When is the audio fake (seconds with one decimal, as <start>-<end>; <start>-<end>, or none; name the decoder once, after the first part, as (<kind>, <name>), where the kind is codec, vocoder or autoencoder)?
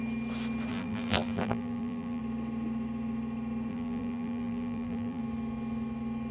0.7-2.2 (vocoder, BigVGAN v2); 3.7-5.2